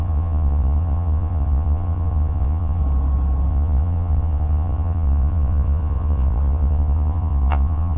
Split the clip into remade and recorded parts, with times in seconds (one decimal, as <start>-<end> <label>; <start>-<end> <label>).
0.0-2.8 remade; 2.8-3.5 recorded; 3.5-8.0 remade